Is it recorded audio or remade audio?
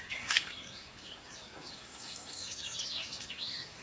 remade